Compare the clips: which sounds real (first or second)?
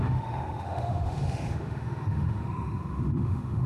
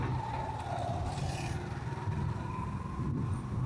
second